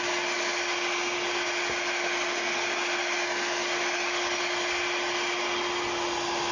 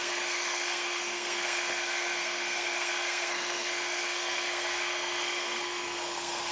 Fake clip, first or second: second